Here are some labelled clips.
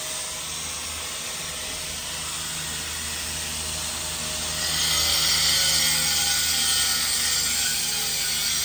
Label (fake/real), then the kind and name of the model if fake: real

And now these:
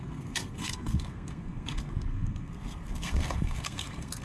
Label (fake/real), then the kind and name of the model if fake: fake, codec, SNAC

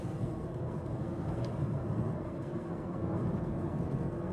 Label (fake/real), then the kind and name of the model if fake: fake, codec, SNAC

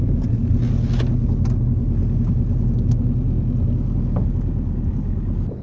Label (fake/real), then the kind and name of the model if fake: real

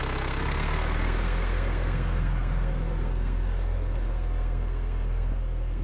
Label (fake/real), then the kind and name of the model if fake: fake, codec, SNAC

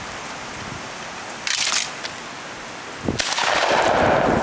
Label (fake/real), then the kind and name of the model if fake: real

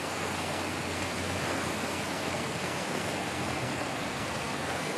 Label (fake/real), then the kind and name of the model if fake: fake, codec, SNAC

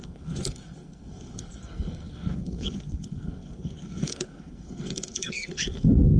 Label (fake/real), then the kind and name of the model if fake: fake, codec, SNAC